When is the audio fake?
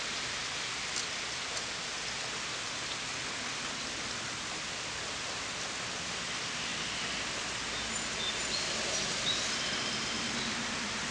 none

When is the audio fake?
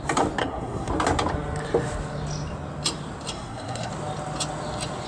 0.4-0.9 (codec, SNAC); 3.3-3.9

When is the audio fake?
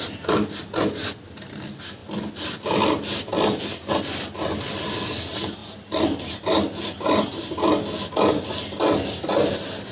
2.0-3.9 (vocoder, BigVGAN v2); 5.6-6.4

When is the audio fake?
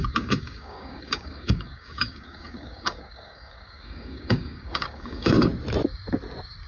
0.0-5.5 (codec, DAC)